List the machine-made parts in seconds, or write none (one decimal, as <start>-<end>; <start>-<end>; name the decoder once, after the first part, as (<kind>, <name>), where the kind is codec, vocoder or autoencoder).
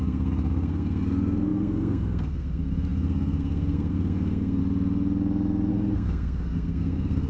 0.0-4.6 (codec, SNAC); 5.7-7.3